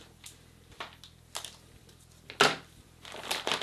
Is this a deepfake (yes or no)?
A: no